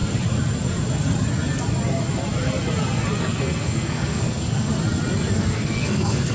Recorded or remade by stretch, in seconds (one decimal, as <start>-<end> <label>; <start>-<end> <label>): 0.0-3.2 recorded; 3.2-4.7 remade; 4.7-5.3 recorded; 5.3-6.3 remade